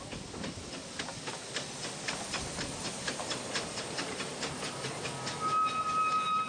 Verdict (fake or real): real